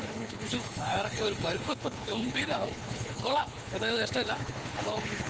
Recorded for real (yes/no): no